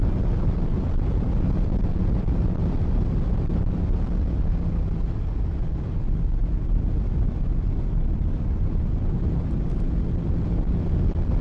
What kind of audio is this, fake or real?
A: real